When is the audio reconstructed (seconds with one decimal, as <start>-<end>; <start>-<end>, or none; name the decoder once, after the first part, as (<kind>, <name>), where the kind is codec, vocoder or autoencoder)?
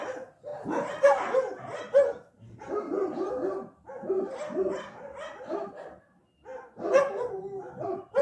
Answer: none